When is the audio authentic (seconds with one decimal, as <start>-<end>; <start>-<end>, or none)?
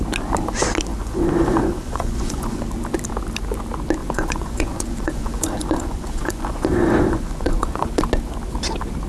0.0-0.9; 2.6-4.0; 8.0-9.1